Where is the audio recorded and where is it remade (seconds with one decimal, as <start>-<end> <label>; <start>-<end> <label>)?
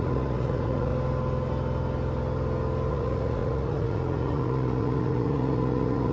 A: 0.0-0.9 remade; 0.9-2.9 recorded; 2.9-6.1 remade